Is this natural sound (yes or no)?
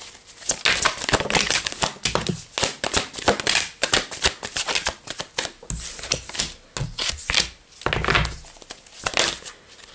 yes